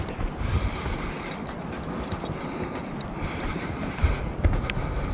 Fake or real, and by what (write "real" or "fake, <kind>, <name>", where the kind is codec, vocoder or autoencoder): real